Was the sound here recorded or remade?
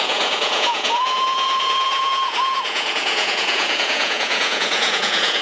remade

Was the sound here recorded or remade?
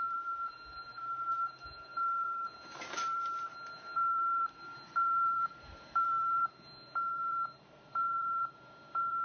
remade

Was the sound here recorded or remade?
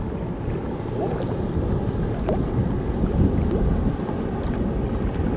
recorded